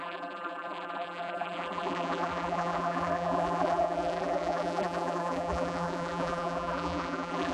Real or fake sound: fake